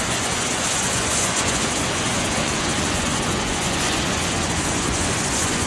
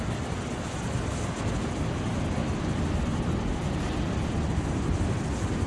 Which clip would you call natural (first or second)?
second